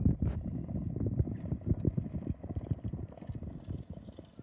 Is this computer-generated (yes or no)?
no